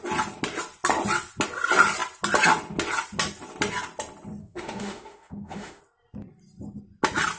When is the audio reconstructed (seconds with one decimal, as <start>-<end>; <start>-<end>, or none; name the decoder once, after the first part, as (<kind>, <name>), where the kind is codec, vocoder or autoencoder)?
4.4-5.8 (autoencoder, DAC-VAE)